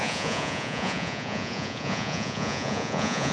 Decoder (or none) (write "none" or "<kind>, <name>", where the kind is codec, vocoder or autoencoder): vocoder, Vocos